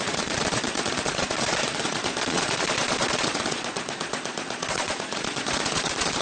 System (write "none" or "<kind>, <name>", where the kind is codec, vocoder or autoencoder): vocoder, Vocos